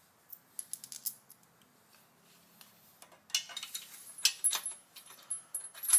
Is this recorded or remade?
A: recorded